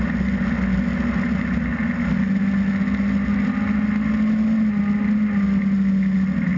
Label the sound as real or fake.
real